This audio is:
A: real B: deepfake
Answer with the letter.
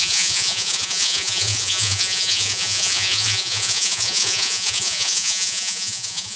B